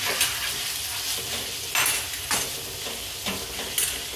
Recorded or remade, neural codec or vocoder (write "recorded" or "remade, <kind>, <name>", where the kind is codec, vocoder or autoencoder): recorded